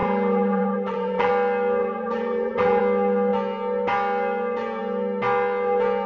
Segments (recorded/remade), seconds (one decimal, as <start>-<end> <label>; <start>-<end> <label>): 0.0-1.3 remade; 1.3-1.8 recorded; 1.8-2.8 remade; 2.8-6.1 recorded